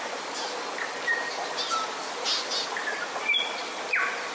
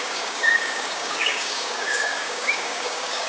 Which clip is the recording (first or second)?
first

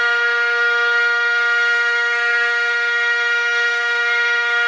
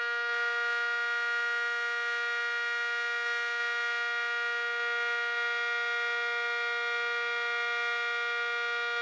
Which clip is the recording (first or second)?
second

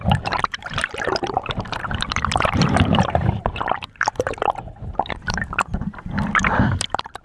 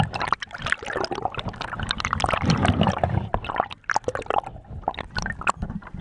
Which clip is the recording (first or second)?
second